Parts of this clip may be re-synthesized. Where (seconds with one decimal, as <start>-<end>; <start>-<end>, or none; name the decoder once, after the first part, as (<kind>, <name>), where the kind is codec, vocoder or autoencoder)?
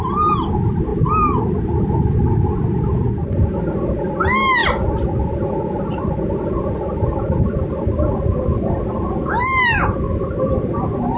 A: none